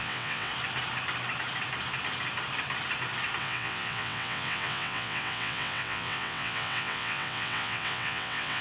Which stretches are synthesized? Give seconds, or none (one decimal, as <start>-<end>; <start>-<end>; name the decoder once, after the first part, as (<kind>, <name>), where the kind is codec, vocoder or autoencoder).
0.0-0.5 (vocoder, WaveNeXt); 3.4-8.6